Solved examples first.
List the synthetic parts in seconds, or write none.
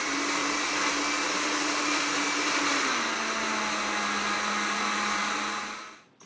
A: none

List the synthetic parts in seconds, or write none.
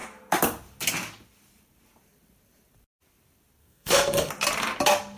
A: 3.6-4.3 (codec, SNAC)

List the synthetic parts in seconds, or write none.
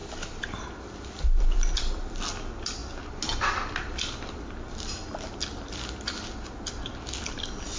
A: none